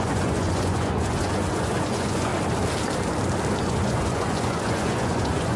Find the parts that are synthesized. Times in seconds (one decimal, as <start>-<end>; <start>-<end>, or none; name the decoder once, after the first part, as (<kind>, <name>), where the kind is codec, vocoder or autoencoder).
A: 0.0-2.3 (vocoder, Vocos); 3.6-5.6